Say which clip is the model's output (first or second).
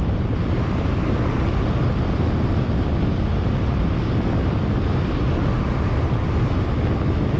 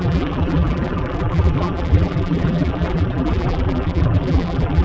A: second